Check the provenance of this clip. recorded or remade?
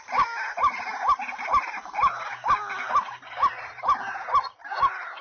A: recorded